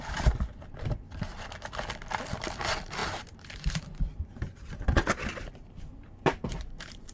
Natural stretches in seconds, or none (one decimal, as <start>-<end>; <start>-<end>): 0.0-3.0; 4.0-6.0

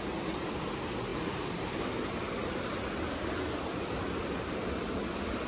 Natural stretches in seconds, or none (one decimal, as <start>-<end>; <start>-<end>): 0.0-2.4; 2.9-5.5

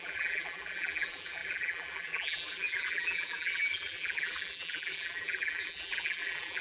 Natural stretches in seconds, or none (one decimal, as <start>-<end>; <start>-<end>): none

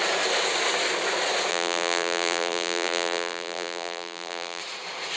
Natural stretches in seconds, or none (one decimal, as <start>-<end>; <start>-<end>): 0.0-1.5; 4.6-5.2

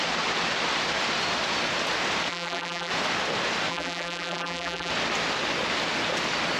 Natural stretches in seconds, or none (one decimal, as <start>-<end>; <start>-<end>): 0.0-2.3; 2.9-3.7; 4.9-6.6